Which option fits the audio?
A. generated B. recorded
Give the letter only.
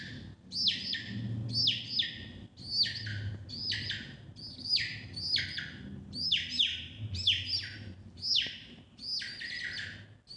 B